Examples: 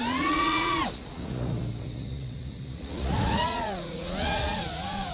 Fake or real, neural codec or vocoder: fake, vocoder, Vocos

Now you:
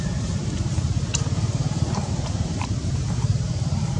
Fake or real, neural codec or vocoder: fake, vocoder, BigVGAN v2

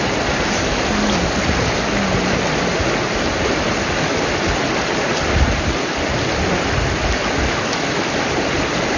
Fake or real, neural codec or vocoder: real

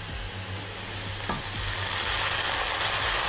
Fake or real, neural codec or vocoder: real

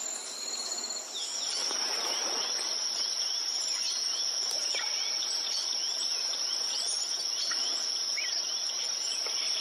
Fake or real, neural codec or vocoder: real